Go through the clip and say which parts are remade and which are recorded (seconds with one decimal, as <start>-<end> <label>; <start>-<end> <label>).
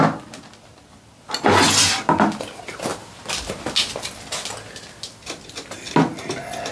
0.0-6.7 recorded